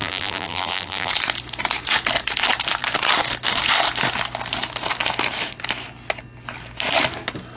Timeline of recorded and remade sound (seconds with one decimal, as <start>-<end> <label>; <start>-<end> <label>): 0.0-1.1 remade; 1.1-7.6 recorded